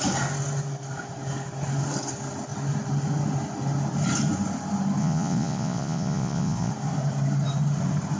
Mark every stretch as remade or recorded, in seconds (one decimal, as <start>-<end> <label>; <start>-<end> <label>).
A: 0.0-5.0 recorded; 5.0-6.7 remade; 6.7-8.2 recorded